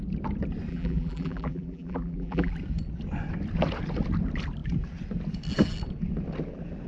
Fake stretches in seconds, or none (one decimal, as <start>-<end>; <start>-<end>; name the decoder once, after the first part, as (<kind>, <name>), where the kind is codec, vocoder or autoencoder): 0.7-2.5 (vocoder, BigVGAN v2)